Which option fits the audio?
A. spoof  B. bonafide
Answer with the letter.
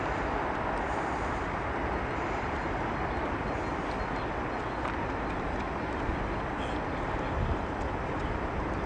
B